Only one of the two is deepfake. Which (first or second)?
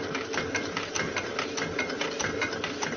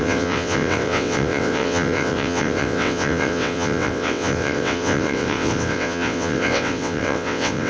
second